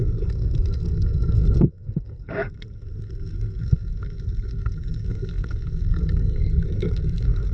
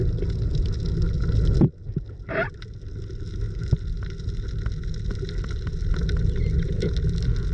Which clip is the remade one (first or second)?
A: first